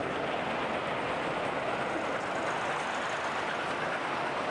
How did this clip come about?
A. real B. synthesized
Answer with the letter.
A